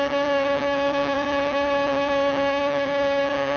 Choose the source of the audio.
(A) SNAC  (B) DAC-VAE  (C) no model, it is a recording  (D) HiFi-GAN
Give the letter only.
D